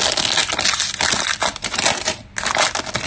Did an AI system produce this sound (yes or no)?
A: no